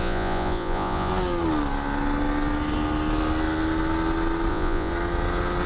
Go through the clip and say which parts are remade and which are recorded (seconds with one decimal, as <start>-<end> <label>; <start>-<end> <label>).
0.0-1.1 remade; 1.1-4.5 recorded; 4.5-4.9 remade; 4.9-5.7 recorded